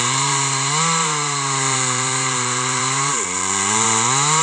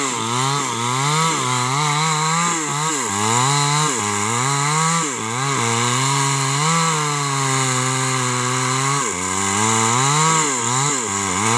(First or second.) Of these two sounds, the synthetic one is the first